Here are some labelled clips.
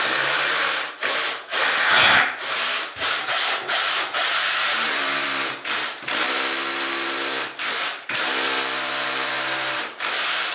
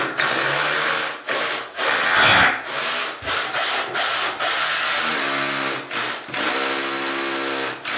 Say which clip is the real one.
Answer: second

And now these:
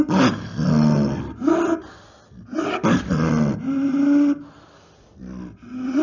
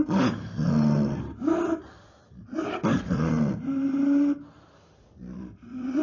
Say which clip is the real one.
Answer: first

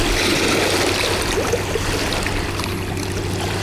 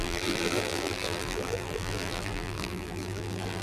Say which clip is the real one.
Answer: first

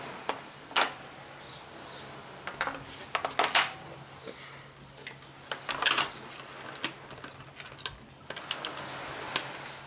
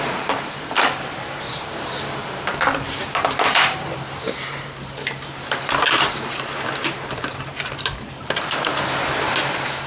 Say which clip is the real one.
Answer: first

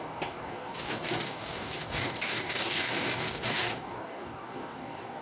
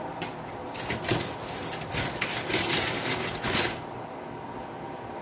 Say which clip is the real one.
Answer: second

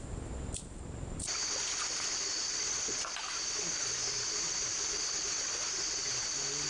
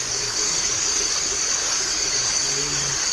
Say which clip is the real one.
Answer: first